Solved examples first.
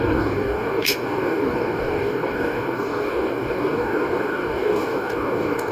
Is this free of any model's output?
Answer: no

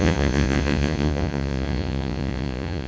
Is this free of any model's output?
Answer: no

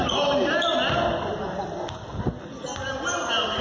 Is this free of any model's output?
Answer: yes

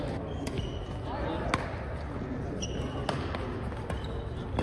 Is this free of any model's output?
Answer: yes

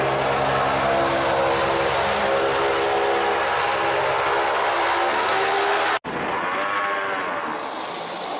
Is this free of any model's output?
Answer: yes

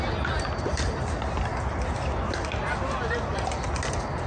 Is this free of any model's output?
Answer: yes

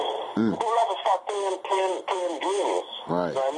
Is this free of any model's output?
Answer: yes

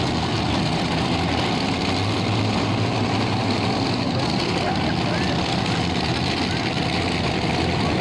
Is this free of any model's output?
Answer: yes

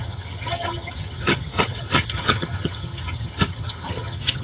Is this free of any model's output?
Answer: no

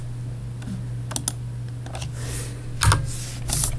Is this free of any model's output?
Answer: yes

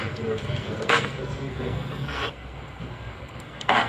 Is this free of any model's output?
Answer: no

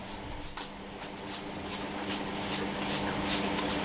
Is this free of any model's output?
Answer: yes